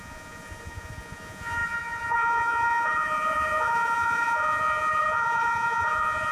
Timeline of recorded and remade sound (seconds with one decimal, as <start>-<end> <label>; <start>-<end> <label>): 0.0-6.3 remade